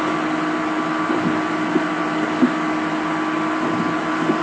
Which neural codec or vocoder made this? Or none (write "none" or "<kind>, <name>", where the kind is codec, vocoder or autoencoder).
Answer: none